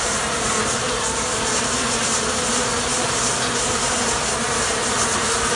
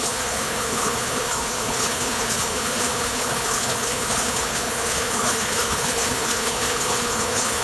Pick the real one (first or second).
first